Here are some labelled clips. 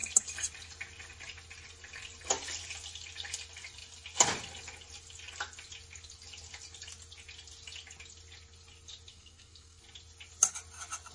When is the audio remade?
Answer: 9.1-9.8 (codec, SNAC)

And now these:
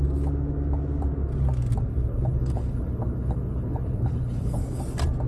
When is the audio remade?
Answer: 1.9-4.8 (codec, HILCodec)

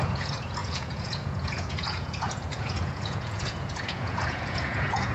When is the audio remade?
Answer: 0.0-5.1 (vocoder, Vocos)